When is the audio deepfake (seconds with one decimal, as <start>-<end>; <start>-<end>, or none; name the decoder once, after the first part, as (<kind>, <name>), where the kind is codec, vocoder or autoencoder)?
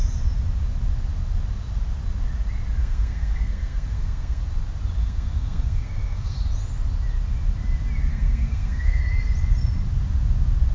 2.8-4.4 (codec, SNAC); 5.0-6.4; 8.1-9.0